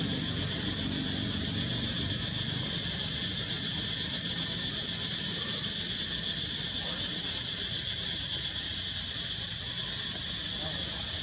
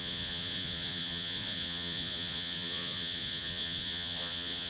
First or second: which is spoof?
second